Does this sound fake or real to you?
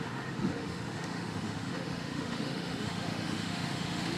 fake